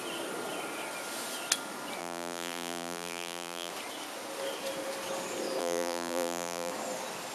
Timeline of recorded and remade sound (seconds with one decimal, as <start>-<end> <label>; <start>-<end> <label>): 0.0-2.0 recorded; 2.0-3.7 remade; 3.7-5.6 recorded; 5.6-6.7 remade; 6.7-7.3 recorded